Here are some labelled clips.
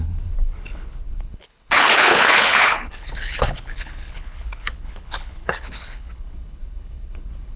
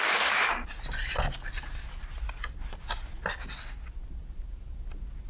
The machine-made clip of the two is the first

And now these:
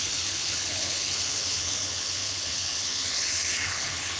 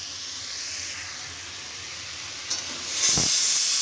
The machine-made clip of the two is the first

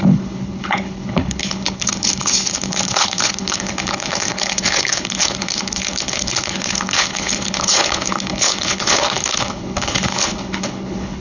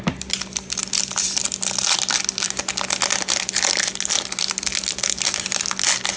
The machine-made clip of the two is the first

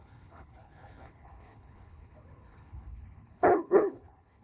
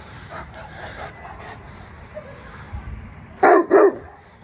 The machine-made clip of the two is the first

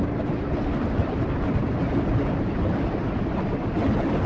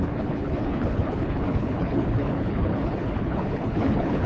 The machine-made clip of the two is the second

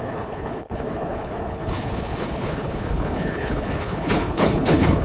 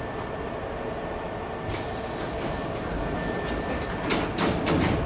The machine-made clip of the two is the first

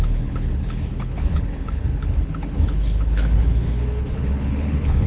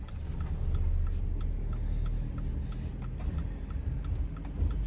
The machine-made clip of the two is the first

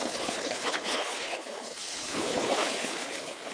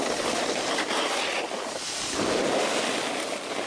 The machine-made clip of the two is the first